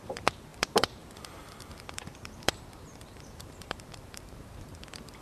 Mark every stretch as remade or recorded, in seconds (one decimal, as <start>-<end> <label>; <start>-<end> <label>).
0.0-5.2 remade